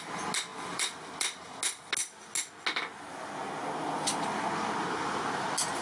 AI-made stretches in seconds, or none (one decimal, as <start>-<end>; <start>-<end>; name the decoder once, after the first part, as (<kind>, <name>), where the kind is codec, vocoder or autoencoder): 0.5-1.4 (vocoder, BigVGAN v2)